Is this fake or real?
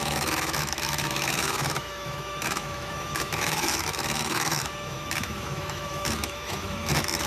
fake